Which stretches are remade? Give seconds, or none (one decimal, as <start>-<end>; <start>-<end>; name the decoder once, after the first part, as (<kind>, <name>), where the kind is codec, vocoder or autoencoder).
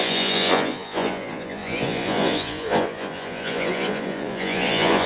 0.0-5.1 (vocoder, Vocos)